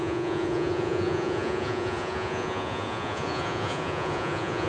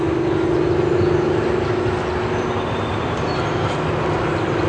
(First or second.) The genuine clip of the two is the second